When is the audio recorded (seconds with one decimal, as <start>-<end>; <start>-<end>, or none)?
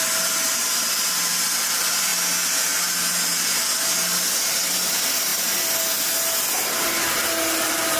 0.0-8.0